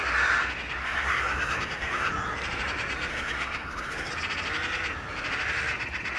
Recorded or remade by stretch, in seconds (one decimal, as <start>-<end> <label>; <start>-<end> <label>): 0.0-0.8 recorded; 0.8-2.1 remade; 2.1-3.1 recorded; 3.1-4.1 remade; 4.1-6.2 recorded